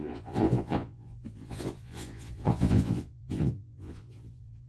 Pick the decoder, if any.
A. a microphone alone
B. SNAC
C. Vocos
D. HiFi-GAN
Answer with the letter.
C